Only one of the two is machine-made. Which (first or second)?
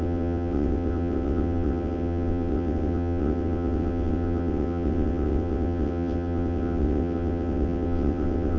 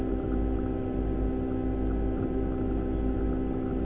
first